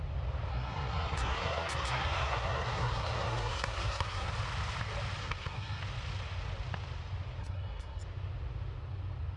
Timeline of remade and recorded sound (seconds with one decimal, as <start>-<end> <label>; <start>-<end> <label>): 0.0-0.5 recorded; 0.5-4.3 remade; 4.3-5.2 recorded; 5.2-5.8 remade; 5.8-7.4 recorded; 7.4-8.0 remade; 8.0-9.4 recorded